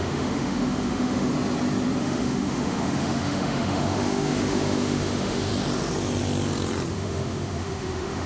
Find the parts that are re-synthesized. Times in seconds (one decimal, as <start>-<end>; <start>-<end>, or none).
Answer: 0.0-1.3; 2.0-5.5; 6.9-8.3